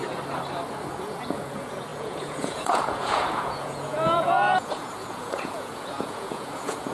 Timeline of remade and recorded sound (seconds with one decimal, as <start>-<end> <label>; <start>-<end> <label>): 0.0-0.9 recorded; 0.9-6.9 remade